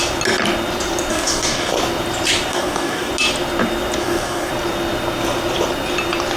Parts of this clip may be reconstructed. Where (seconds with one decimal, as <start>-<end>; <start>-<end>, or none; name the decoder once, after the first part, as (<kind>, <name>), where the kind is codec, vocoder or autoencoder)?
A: 1.1-1.7 (codec, DAC); 2.5-3.1; 4.0-4.5